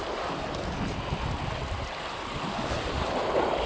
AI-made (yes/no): no